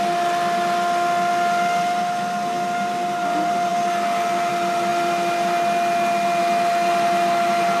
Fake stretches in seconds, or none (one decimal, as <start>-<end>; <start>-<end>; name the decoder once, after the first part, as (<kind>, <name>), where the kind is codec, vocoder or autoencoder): none